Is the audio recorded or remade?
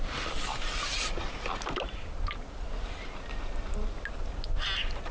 recorded